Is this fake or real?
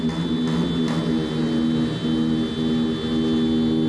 real